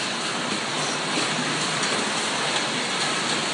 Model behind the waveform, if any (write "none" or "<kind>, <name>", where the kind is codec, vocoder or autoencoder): none